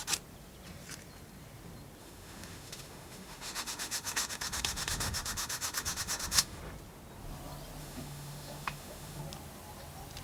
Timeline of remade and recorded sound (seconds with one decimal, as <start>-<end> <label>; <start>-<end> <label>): 0.0-2.0 recorded; 2.0-6.6 remade; 6.6-7.8 recorded; 7.8-9.2 remade; 9.2-10.2 recorded